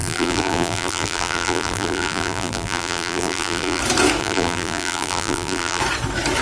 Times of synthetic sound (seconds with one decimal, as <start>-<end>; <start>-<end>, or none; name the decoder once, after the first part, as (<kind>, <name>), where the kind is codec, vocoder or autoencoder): 0.0-3.8 (vocoder, BigVGAN v2); 4.2-5.8